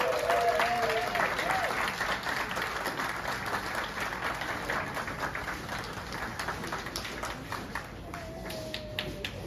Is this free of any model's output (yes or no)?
yes